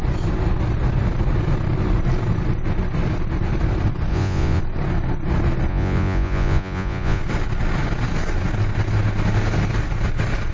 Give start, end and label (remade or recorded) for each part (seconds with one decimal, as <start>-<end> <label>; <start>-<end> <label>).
0.0-4.1 recorded; 4.1-4.6 remade; 4.6-5.7 recorded; 5.7-7.2 remade; 7.2-10.5 recorded